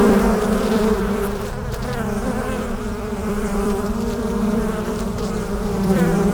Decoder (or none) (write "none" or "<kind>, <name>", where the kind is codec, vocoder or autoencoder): vocoder, BigVGAN v2